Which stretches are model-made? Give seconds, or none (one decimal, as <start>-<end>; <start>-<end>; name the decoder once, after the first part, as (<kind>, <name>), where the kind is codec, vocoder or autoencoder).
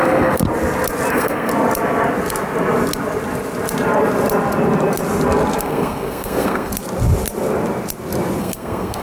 0.0-0.4 (codec, SNAC); 1.1-1.5; 5.6-6.7; 8.4-9.0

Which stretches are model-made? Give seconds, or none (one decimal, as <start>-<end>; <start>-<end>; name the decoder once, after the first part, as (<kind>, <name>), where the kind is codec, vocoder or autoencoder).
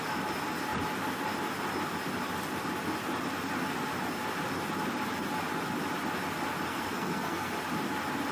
6.7-7.5 (codec, SNAC)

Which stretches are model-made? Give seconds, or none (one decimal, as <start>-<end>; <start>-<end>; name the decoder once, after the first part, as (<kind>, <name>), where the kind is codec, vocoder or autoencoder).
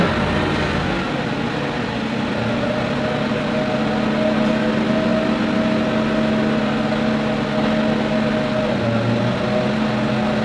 none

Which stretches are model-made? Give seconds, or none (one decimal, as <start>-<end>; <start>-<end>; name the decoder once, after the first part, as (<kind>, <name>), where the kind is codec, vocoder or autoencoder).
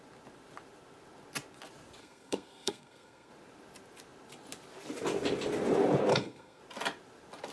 2.0-3.3 (codec, SNAC); 6.1-6.6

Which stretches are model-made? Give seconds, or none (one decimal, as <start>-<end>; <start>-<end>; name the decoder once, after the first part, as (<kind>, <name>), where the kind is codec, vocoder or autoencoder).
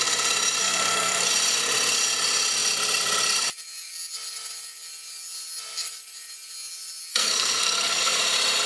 0.6-1.3 (codec, SNAC); 7.1-8.2